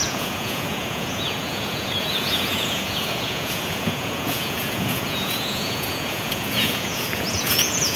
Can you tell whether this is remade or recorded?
remade